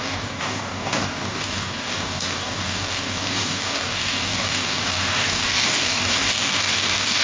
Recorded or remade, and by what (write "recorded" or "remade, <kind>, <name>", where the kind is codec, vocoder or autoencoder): remade, codec, DAC